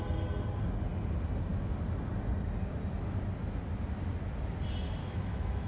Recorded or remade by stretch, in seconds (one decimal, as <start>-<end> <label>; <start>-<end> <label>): 0.0-5.0 recorded; 5.0-5.7 remade